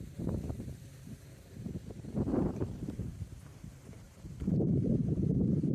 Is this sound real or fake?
fake